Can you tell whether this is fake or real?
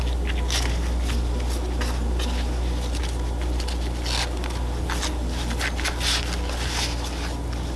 real